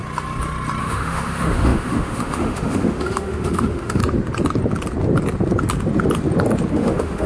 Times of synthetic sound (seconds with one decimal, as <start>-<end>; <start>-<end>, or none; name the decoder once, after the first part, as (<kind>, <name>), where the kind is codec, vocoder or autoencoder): 0.8-4.0 (autoencoder, DAC-VAE); 6.7-7.3